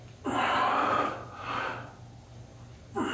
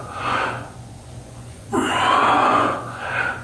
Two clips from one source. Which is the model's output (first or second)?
second